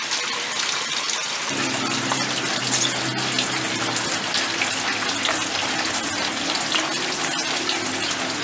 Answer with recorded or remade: recorded